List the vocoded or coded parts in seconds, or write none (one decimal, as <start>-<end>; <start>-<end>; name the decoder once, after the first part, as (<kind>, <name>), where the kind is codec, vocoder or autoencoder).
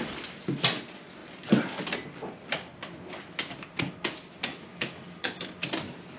4.5-5.5 (autoencoder, DAC-VAE)